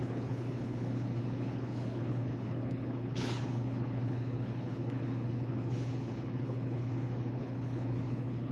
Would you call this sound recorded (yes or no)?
no